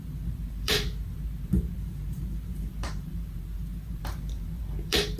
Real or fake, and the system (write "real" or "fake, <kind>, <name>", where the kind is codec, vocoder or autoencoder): fake, vocoder, BigVGAN v2